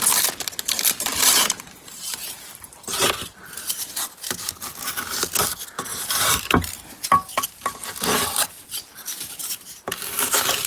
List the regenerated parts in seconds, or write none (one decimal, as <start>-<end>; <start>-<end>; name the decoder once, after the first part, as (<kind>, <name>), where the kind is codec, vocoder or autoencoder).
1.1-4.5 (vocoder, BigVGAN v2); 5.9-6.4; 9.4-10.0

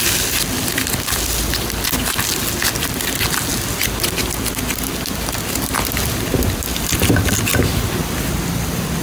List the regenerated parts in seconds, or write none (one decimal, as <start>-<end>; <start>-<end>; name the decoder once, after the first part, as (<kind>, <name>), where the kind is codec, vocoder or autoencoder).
none

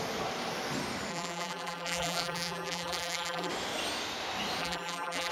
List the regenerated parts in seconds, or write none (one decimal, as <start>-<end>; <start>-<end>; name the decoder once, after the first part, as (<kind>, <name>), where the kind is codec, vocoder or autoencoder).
1.1-3.5 (vocoder, BigVGAN v2); 4.6-5.3